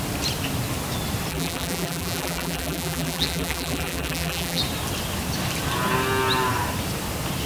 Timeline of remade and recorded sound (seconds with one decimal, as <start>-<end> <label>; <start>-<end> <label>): 0.0-1.3 recorded; 1.3-4.6 remade; 4.6-7.5 recorded